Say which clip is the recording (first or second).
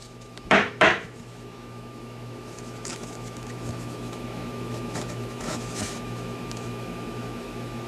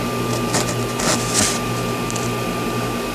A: second